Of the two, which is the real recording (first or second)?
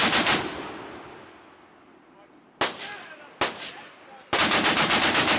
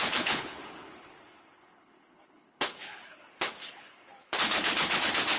first